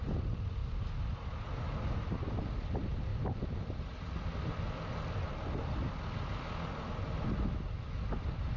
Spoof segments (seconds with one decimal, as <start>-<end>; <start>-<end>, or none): none